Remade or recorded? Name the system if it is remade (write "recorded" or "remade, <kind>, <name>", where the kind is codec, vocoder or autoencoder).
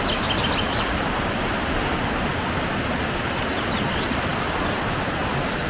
recorded